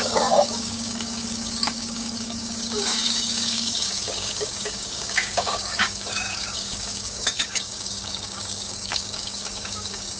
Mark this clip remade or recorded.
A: remade